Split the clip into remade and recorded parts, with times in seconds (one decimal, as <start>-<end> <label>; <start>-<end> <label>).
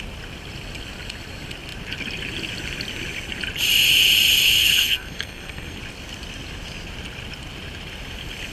0.0-4.6 recorded; 4.6-5.8 remade; 5.8-8.5 recorded